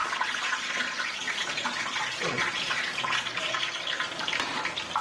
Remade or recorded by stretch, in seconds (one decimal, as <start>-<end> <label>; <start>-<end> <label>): 0.0-3.6 remade; 3.6-5.0 recorded